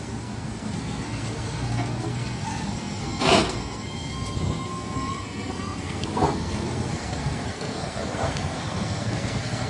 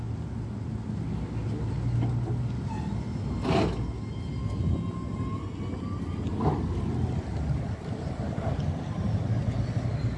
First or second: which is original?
second